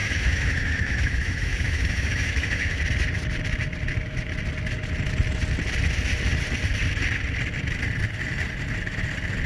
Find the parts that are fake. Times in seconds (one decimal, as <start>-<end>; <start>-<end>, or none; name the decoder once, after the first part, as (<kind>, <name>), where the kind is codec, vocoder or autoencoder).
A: 0.0-2.8 (autoencoder, DAC-VAE)